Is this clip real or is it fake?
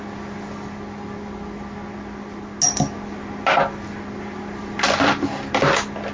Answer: real